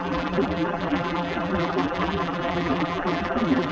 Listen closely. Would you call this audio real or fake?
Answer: fake